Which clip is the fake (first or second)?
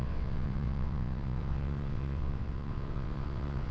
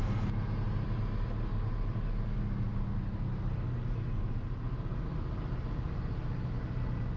first